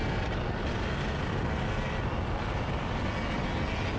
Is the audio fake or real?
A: real